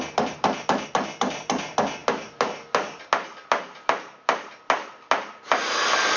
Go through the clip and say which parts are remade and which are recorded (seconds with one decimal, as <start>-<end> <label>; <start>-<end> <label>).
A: 0.0-6.2 recorded